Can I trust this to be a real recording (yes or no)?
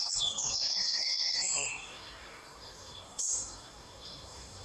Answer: no